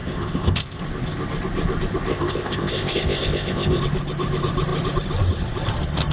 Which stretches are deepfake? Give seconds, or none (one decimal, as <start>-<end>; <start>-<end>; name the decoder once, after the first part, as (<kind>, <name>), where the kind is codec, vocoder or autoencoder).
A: 0.0-0.8 (codec, ZipCodec); 2.1-3.8